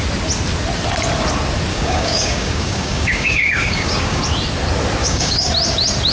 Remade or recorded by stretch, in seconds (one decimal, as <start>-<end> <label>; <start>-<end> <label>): 0.0-1.7 recorded; 1.7-4.2 remade; 4.2-5.0 recorded; 5.0-5.5 remade; 5.5-6.1 recorded